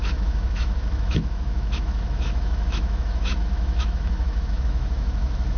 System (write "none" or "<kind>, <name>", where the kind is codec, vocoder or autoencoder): autoencoder, DAC-VAE